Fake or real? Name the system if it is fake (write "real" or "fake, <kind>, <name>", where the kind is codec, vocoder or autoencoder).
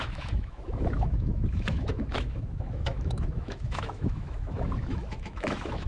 fake, autoencoder, DAC-VAE